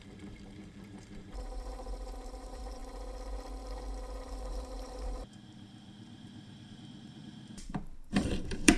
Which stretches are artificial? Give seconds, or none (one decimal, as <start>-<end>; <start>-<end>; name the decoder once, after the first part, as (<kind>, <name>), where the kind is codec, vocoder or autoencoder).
0.0-2.8 (vocoder, BigVGAN v2); 4.2-8.8